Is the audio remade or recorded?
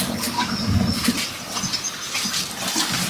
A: recorded